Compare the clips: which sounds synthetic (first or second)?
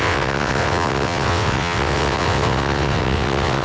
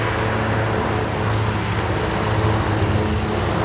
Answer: first